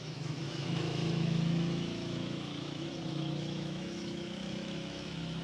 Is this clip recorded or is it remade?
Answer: remade